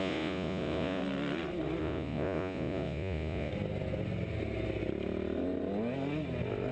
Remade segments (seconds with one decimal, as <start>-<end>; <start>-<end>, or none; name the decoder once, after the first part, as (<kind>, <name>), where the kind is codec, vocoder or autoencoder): 0.0-1.0 (vocoder, Vocos); 1.8-3.5